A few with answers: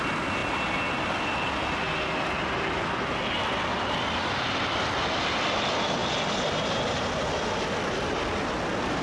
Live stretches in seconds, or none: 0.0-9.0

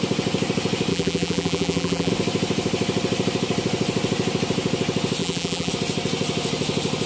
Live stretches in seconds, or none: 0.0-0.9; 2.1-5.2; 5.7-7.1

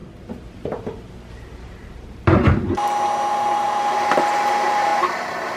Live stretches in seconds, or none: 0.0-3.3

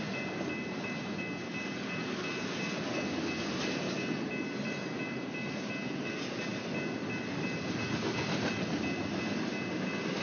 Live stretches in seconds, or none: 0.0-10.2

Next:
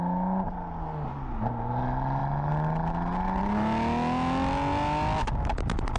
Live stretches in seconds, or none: 0.0-6.0